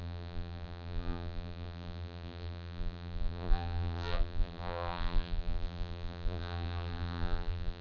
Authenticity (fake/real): fake